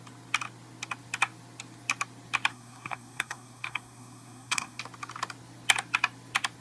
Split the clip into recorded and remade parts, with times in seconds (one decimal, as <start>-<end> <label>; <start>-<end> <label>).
0.0-2.5 recorded; 2.5-4.8 remade; 4.8-6.6 recorded